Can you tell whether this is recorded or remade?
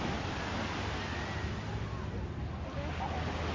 recorded